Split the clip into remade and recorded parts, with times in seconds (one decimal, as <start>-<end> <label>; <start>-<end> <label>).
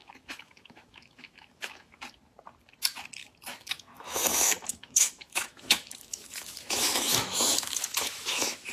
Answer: 0.0-2.0 remade; 2.0-3.2 recorded; 3.2-8.7 remade